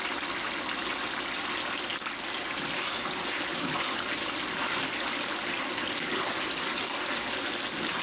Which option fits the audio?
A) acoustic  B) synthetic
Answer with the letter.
A